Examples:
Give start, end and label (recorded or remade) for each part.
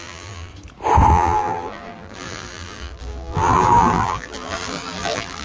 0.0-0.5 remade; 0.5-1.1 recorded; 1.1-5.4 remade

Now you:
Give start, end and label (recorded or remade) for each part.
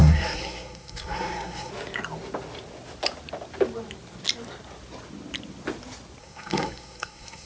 0.0-1.7 remade; 1.7-6.2 recorded; 6.2-7.5 remade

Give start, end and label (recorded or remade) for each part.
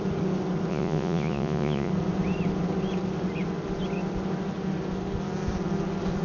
0.0-0.7 recorded; 0.7-1.9 remade; 1.9-6.2 recorded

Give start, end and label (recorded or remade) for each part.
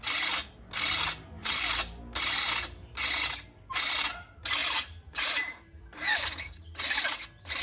0.0-1.4 recorded; 1.4-2.0 remade; 2.0-4.6 recorded; 4.6-7.1 remade; 7.1-7.6 recorded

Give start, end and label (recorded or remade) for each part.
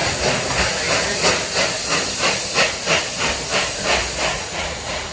0.0-4.3 recorded; 4.3-5.1 remade